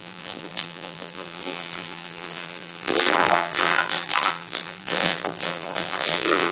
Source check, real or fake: fake